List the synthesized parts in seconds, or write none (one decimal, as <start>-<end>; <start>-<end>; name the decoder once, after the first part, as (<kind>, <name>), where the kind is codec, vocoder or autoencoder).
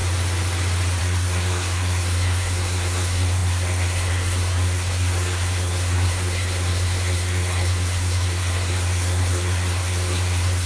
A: 1.0-10.7 (codec, SNAC)